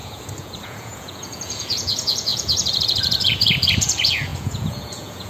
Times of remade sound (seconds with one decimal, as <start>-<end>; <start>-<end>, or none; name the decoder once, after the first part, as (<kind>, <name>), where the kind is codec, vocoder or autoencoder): 0.0-5.3 (vocoder, Vocos)